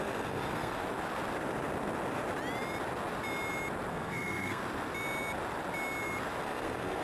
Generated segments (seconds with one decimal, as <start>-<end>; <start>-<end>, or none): 0.0-0.8; 3.9-4.6; 6.4-7.0